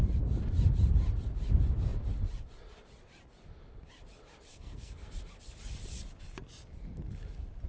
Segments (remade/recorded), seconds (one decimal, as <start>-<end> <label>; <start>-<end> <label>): 0.0-4.5 recorded; 4.5-5.1 remade; 5.1-7.7 recorded